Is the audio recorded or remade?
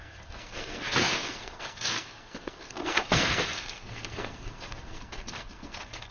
remade